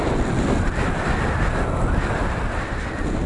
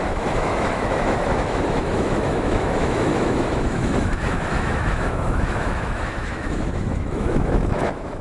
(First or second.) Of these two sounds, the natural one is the first